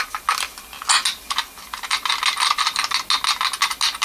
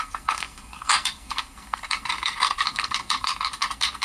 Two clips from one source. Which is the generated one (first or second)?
second